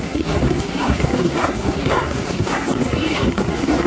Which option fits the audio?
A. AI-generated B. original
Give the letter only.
A